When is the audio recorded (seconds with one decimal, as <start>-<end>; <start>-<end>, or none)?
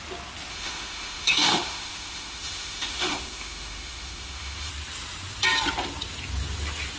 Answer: 0.0-0.5; 4.7-7.0